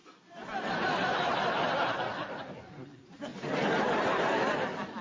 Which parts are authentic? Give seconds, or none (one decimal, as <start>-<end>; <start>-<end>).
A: 0.0-5.0